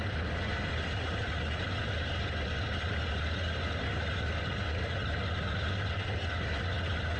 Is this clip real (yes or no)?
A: yes